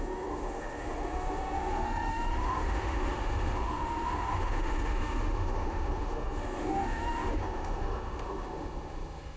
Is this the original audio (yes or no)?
no